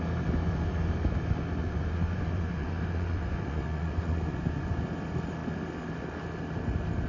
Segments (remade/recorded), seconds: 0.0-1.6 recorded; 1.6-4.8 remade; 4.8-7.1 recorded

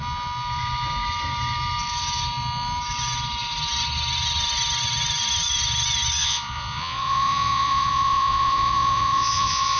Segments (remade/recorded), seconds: 0.0-6.2 recorded; 6.2-9.8 remade